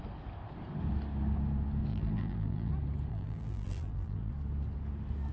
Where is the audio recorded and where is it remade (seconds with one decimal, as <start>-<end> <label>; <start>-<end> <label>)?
0.0-1.9 recorded; 1.9-2.7 remade; 2.7-3.1 recorded; 3.1-4.3 remade; 4.3-5.3 recorded